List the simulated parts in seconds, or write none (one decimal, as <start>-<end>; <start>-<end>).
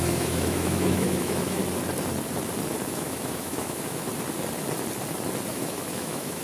0.0-1.6; 2.9-4.1; 5.5-6.4